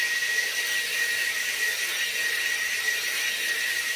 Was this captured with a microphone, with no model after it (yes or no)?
yes